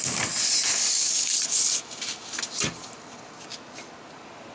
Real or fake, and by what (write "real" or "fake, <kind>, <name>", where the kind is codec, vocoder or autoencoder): real